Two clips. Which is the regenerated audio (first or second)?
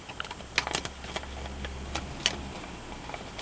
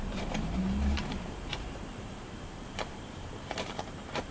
second